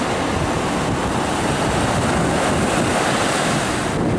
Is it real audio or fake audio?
real